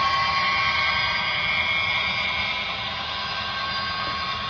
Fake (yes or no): no